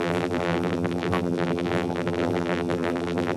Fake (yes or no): yes